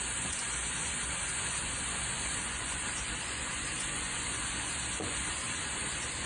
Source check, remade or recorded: remade